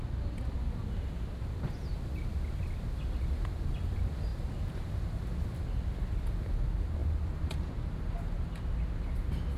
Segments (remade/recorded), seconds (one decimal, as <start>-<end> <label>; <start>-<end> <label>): 0.0-9.6 recorded